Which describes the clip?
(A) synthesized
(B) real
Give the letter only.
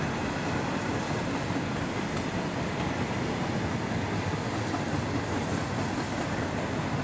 B